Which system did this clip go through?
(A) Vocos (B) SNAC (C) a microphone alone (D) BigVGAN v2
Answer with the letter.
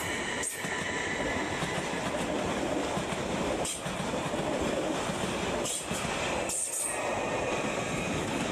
C